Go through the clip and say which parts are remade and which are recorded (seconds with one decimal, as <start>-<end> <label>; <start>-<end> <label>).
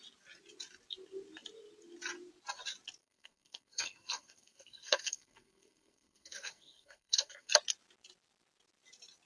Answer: 0.0-3.0 recorded; 3.0-7.5 remade; 7.5-9.3 recorded